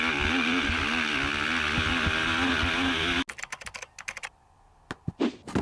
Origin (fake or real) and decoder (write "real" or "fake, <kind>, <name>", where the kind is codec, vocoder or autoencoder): real